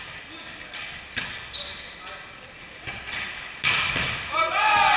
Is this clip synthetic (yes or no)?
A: no